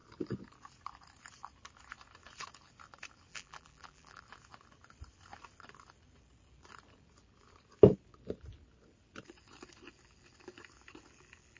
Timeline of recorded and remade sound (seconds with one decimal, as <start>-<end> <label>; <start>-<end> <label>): 0.0-3.3 recorded; 3.3-4.2 remade; 4.2-11.6 recorded